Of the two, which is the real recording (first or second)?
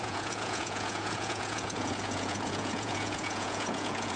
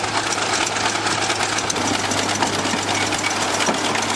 second